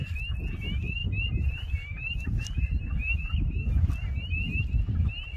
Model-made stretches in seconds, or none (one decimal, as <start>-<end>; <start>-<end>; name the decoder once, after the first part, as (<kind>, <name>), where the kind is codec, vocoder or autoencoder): 1.0-3.7 (vocoder, BigVGAN v2)